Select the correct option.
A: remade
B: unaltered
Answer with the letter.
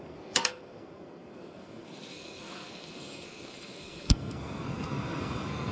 A